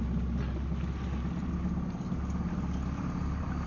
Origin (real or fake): real